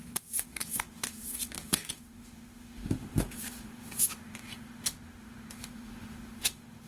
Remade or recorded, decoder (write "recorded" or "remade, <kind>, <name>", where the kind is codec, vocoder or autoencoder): remade, autoencoder, DAC-VAE